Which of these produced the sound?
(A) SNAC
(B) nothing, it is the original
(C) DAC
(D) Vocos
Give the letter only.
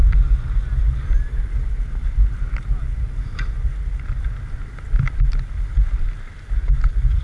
B